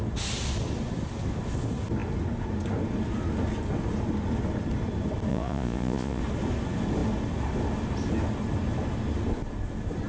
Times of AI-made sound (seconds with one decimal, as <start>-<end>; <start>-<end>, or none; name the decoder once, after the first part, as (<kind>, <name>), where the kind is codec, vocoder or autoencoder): 5.3-6.2 (vocoder, Vocos)